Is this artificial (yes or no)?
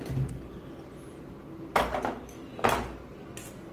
no